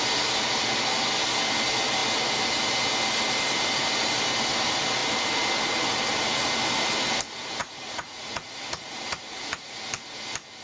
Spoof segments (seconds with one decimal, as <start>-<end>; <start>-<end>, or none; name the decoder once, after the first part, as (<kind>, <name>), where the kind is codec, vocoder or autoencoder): 7.6-9.8 (vocoder, Vocos)